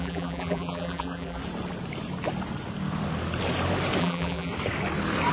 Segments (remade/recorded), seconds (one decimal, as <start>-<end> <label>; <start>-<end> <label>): 0.0-1.4 remade; 1.4-4.0 recorded; 4.0-4.5 remade; 4.5-5.3 recorded